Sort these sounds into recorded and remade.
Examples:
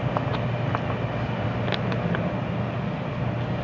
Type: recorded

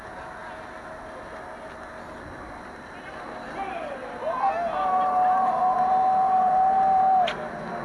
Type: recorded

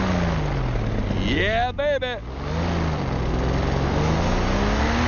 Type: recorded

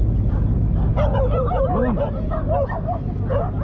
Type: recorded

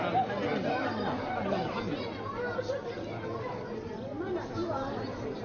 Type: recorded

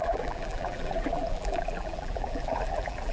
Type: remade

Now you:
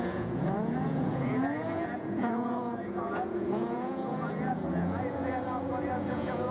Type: remade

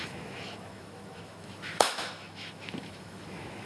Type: remade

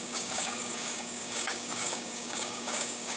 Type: remade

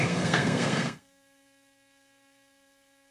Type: remade